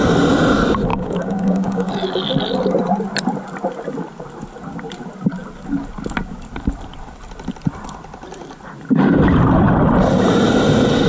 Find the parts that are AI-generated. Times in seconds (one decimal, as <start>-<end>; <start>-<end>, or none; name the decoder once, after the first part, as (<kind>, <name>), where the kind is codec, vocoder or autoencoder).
0.9-1.9 (codec, DAC)